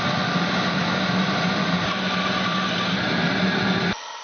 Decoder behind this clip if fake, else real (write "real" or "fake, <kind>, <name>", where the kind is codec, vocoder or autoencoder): real